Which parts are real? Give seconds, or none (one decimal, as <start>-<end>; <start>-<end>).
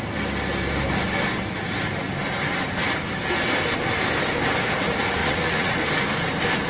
0.0-5.2; 5.8-6.7